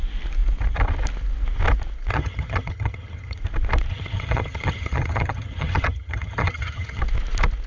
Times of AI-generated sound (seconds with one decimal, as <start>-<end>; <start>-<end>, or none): 2.1-3.4; 3.9-7.0